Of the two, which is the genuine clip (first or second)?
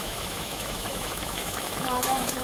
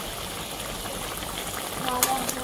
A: second